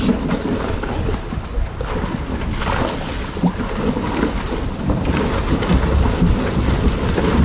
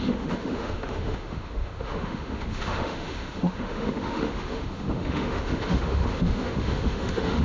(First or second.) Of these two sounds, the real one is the first